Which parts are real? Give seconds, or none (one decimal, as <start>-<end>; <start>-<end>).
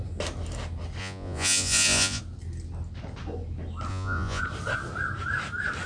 0.0-1.0; 2.2-3.9; 4.4-5.9